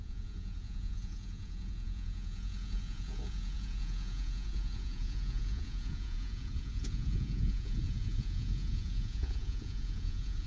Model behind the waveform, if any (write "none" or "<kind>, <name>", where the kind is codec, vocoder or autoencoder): vocoder, Vocos